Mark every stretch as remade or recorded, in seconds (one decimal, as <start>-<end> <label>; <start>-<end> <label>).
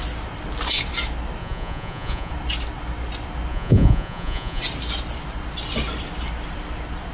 0.0-1.4 recorded; 1.4-2.3 remade; 2.3-3.5 recorded; 3.5-4.6 remade; 4.6-7.1 recorded